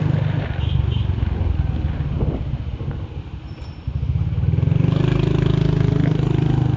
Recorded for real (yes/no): yes